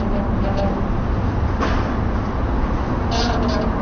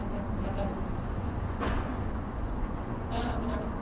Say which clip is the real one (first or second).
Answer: first